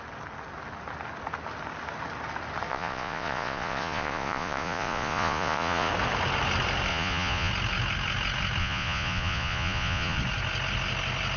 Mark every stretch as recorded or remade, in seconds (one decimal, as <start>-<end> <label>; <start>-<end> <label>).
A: 0.0-2.7 recorded; 2.7-5.9 remade; 5.9-6.9 recorded; 6.9-7.5 remade; 7.5-8.6 recorded; 8.6-10.2 remade; 10.2-11.4 recorded